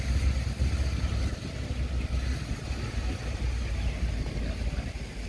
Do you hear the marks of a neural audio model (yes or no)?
no